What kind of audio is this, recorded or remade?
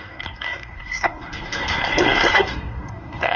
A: remade